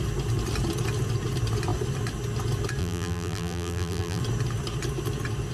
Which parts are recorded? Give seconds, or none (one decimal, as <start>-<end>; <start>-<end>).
0.0-2.8; 4.2-5.5